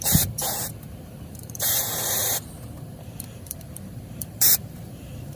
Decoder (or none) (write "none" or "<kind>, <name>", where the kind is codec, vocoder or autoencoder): vocoder, BigVGAN v2